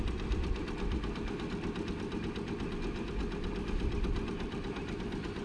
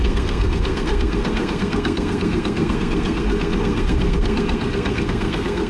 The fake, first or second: second